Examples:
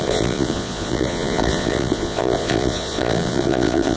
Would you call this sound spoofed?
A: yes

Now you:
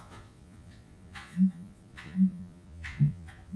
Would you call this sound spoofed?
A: yes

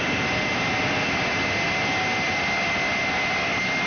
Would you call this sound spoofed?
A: no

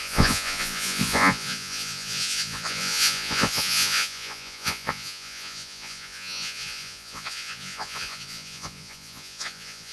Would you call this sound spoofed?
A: yes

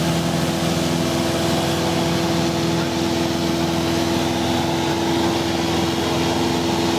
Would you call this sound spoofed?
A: no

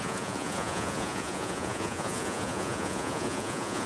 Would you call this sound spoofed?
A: yes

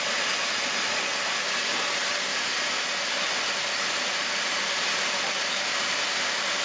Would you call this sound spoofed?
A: no